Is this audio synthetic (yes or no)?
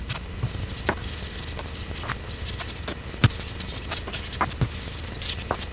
no